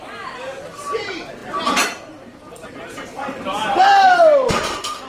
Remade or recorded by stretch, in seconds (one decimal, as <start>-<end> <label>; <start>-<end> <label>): 0.0-1.4 recorded; 1.4-4.5 remade; 4.5-5.1 recorded